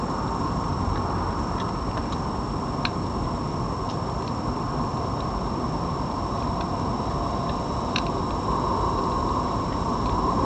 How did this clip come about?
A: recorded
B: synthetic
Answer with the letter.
A